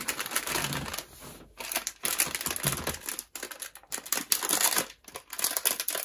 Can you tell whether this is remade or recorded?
recorded